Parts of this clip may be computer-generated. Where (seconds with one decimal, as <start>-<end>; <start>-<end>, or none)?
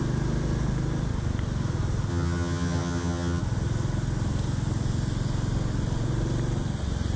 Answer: 2.1-3.4